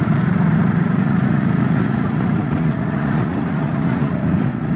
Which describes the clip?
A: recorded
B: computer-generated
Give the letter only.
B